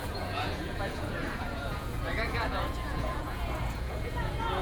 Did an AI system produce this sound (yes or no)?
yes